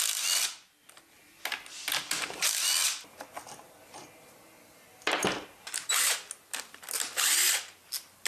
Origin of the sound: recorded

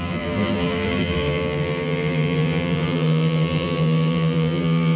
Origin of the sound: remade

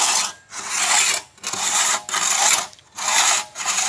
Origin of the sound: recorded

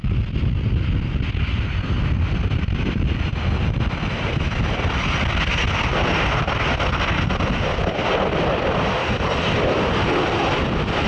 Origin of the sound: recorded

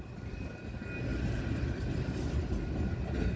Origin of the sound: recorded